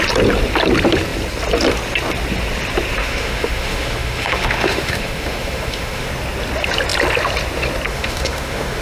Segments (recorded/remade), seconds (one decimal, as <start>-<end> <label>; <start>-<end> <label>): 0.0-3.0 recorded; 3.0-6.1 remade; 6.1-7.9 recorded; 7.9-8.8 remade